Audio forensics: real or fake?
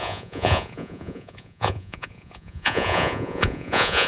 fake